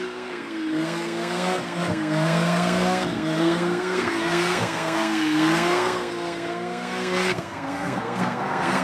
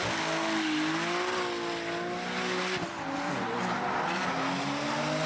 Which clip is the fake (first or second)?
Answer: first